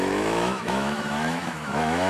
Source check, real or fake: fake